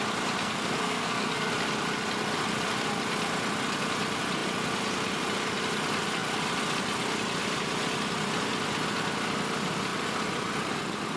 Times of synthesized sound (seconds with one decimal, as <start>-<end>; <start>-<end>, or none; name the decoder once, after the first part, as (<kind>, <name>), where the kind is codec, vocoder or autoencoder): 0.4-1.5 (codec, SNAC)